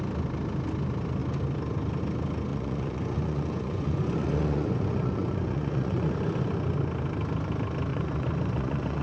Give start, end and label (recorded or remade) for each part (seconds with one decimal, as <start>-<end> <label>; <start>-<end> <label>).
0.0-2.5 recorded; 2.5-6.1 remade; 6.1-7.9 recorded; 7.9-9.0 remade